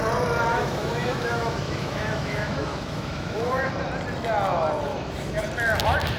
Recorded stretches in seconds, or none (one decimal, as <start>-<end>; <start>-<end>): 0.0-0.5; 3.7-4.9; 5.4-6.2